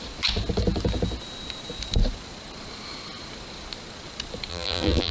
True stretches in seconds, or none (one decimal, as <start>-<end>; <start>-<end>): 0.0-4.5